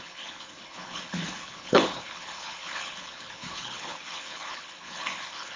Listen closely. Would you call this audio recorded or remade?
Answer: remade